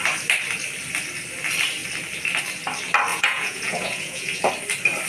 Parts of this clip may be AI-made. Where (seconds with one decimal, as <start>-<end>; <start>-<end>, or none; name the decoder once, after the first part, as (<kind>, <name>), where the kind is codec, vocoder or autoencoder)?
3.1-4.5 (vocoder, Vocos)